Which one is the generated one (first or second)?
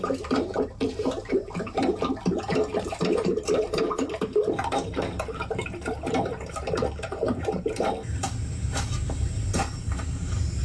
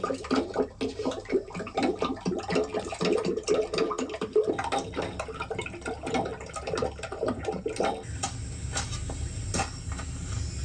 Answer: first